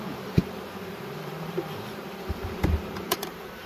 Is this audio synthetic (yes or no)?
yes